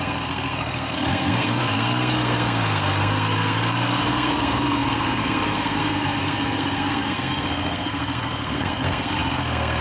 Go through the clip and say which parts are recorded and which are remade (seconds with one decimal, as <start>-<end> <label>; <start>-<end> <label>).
0.0-9.8 remade